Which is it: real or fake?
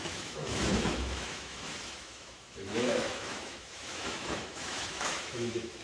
fake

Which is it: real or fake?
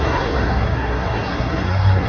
fake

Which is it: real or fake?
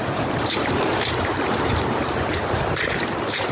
fake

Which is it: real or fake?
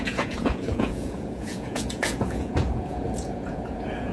fake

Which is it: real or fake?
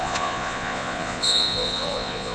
fake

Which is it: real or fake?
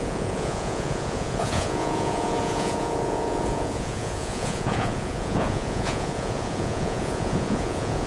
fake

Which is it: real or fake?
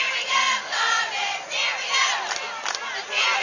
real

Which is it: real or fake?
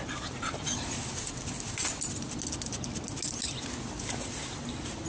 real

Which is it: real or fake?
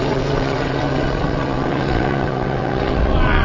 fake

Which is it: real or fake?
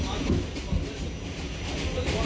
real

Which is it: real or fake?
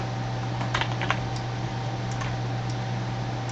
real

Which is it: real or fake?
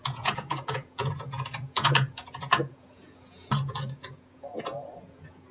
fake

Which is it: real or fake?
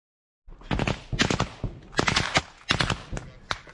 real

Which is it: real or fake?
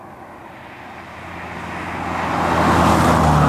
real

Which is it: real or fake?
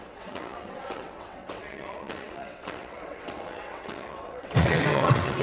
fake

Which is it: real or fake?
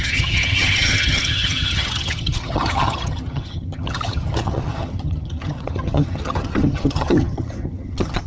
fake